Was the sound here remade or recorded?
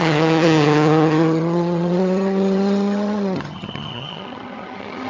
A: remade